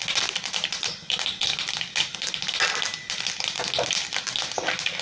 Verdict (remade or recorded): recorded